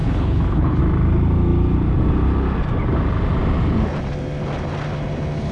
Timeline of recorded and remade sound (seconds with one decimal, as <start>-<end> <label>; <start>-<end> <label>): 0.0-0.8 remade; 0.8-5.5 recorded